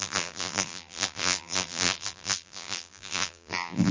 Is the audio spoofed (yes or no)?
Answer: yes